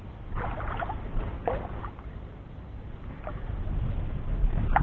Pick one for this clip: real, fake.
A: real